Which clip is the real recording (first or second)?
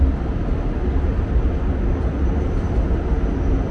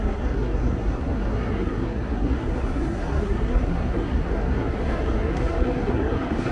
first